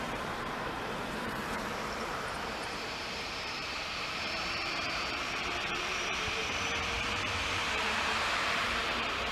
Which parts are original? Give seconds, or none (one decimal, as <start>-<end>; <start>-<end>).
none